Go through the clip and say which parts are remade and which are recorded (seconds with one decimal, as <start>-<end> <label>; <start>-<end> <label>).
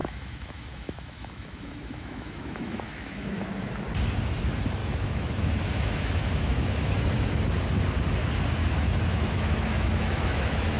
0.0-3.7 remade; 3.7-4.8 recorded; 4.8-7.1 remade; 7.1-8.6 recorded; 8.6-10.8 remade